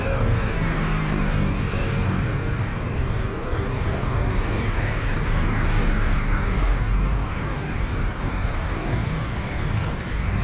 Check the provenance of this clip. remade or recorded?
remade